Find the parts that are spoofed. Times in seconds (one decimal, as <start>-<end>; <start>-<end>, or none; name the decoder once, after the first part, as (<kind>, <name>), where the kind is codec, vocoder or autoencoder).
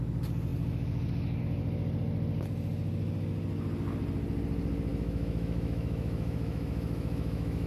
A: 4.9-7.7 (autoencoder, DAC-VAE)